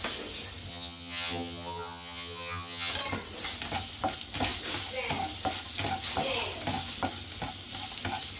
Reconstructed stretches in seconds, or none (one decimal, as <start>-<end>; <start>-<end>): 0.7-2.9